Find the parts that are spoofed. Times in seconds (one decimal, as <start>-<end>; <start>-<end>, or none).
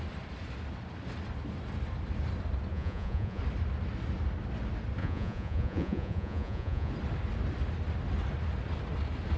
2.7-3.4; 5.0-6.9